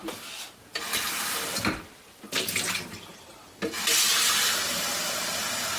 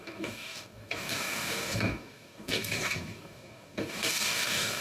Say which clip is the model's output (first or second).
second